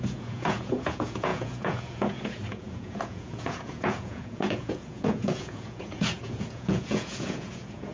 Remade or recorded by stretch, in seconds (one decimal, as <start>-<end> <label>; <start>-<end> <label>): 0.0-7.9 remade